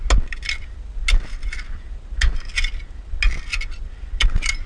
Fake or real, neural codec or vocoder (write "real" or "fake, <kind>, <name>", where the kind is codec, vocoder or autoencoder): real